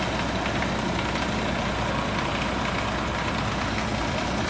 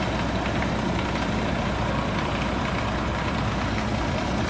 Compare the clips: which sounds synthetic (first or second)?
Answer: second